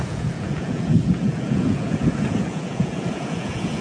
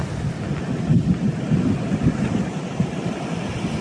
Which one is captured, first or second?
second